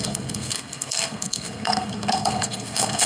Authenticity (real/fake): fake